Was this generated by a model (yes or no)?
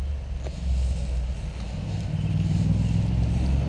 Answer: no